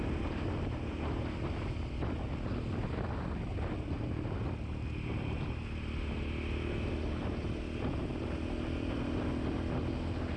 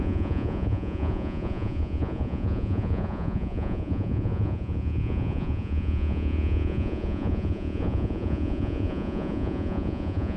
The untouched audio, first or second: first